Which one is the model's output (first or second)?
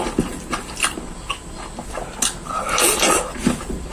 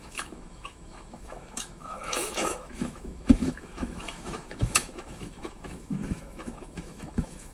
second